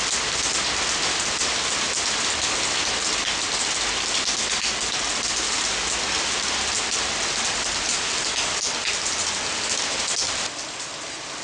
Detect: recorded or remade recorded